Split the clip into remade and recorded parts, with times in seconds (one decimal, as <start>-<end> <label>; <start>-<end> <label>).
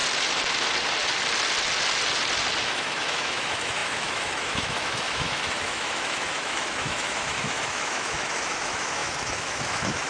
0.0-2.6 recorded; 2.6-10.1 remade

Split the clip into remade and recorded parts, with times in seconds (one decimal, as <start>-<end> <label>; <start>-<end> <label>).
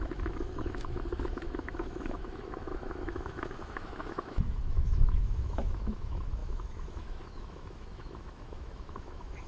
0.0-9.5 remade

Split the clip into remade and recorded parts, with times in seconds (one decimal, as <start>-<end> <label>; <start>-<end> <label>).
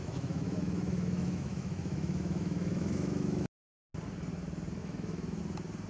0.0-3.5 remade; 3.5-4.8 recorded; 4.8-5.4 remade; 5.4-5.9 recorded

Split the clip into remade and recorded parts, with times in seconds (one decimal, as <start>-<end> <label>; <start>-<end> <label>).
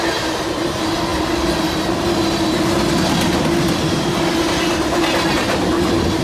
0.0-6.2 recorded